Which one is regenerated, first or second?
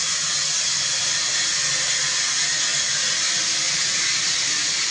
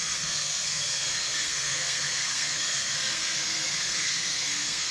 second